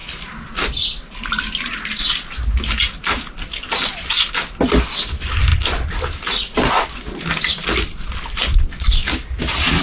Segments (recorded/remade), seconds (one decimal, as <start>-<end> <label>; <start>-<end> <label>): 0.0-9.8 recorded